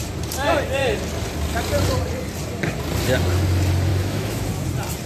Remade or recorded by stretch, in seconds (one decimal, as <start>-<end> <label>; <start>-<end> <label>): 0.0-3.9 recorded; 3.9-4.5 remade; 4.5-5.1 recorded